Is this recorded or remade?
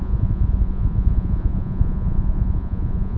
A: remade